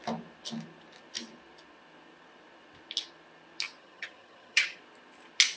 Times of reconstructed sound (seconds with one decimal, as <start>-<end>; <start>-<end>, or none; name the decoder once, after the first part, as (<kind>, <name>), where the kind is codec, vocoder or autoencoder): 3.8-4.8 (vocoder, HiFi-GAN)